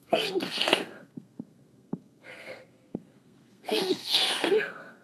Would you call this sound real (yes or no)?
no